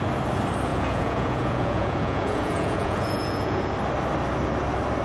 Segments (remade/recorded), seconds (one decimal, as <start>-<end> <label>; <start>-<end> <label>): 0.0-0.7 recorded; 0.7-3.7 remade; 3.7-5.0 recorded